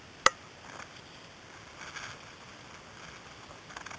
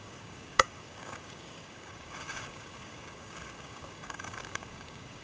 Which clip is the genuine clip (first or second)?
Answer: first